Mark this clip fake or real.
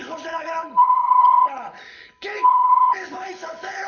fake